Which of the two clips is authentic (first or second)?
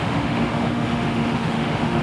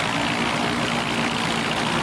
second